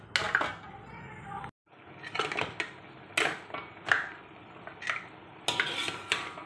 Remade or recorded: recorded